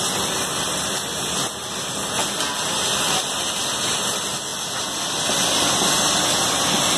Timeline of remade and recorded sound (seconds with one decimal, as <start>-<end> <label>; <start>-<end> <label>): 0.0-7.0 recorded